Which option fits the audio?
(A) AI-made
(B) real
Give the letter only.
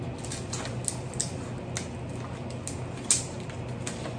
B